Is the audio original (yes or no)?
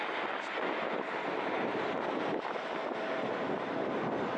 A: yes